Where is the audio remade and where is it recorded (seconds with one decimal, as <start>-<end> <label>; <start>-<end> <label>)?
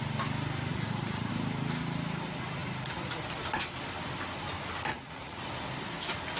0.0-0.7 recorded; 0.7-1.3 remade; 1.3-4.9 recorded; 4.9-5.4 remade; 5.4-6.4 recorded